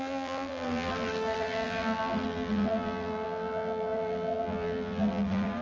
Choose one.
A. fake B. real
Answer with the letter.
A